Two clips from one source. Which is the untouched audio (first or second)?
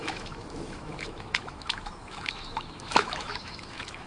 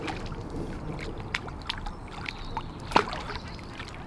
second